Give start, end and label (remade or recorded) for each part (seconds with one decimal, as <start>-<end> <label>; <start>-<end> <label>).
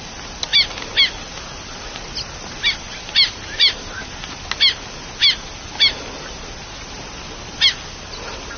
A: 0.0-8.6 recorded